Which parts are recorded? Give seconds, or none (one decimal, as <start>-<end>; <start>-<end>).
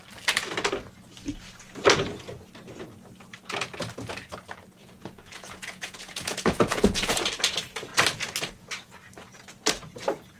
0.0-4.8; 7.2-10.4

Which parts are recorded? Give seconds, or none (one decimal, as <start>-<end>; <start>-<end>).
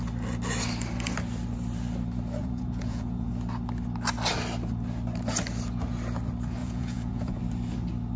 0.0-2.4; 3.3-6.6; 7.4-8.2